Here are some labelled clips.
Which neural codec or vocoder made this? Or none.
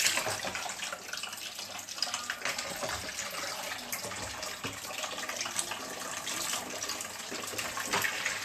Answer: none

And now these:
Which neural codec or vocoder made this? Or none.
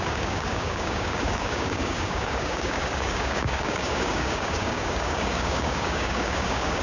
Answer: codec, DAC